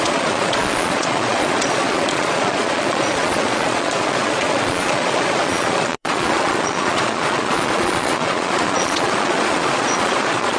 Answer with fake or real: fake